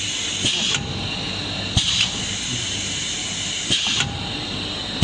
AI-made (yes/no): no